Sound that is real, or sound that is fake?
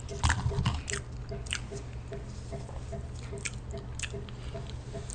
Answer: real